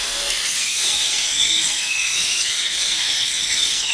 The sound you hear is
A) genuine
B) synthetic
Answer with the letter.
B